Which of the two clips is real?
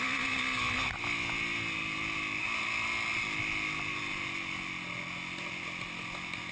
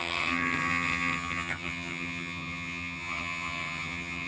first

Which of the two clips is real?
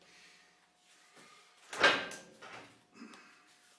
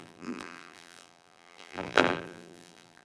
first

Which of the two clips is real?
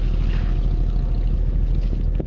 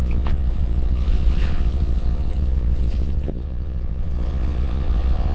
first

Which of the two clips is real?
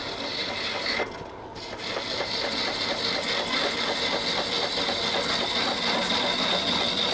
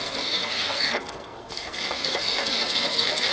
first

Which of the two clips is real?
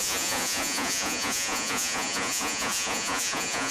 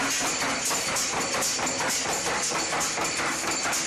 second